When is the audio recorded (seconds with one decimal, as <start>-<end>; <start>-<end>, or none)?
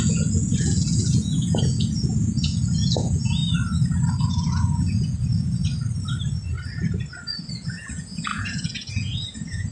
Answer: 3.4-4.2; 5.6-7.5